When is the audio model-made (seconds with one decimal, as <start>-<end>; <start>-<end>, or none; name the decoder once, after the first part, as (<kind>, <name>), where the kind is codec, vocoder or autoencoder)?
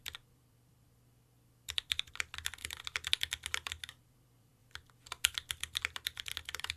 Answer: 0.0-2.6 (vocoder, BigVGAN v2); 3.9-4.6; 5.5-6.8